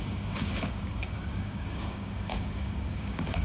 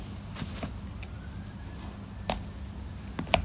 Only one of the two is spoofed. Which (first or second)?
first